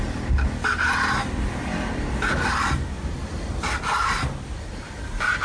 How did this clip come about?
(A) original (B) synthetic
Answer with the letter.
A